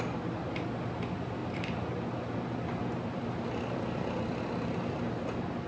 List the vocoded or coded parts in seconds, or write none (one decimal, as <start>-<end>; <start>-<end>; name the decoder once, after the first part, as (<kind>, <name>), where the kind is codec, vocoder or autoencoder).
1.4-4.4 (vocoder, BigVGAN v2)